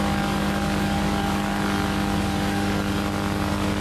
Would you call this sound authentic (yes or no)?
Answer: no